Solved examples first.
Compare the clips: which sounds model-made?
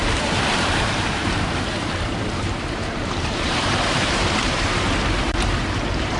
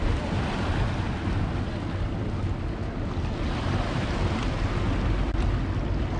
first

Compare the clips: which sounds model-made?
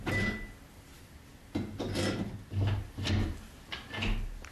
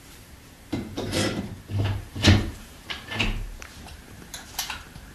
second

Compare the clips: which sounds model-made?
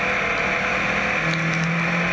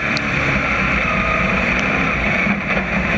second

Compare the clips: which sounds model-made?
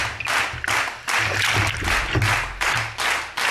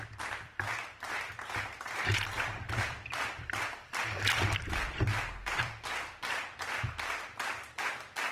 second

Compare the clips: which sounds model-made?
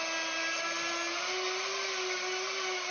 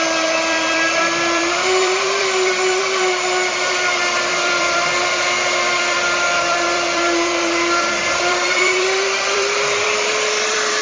second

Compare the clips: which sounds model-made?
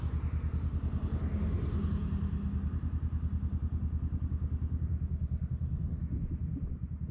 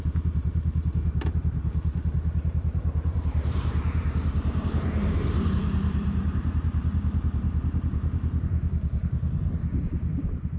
second